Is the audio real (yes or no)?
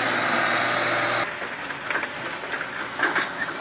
yes